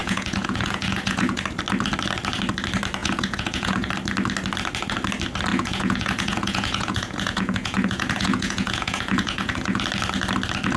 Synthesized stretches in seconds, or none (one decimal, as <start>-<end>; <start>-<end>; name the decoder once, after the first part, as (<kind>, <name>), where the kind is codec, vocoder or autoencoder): 0.0-1.4 (vocoder, Vocos); 3.0-3.9; 5.5-9.8